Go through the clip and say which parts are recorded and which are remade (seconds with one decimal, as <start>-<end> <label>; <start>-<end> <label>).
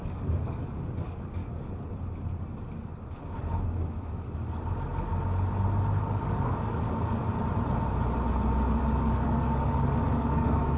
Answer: 0.0-1.4 remade; 1.4-6.0 recorded; 6.0-7.2 remade; 7.2-8.8 recorded; 8.8-10.8 remade